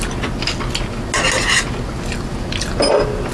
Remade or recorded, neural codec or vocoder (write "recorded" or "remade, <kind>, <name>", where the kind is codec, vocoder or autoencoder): recorded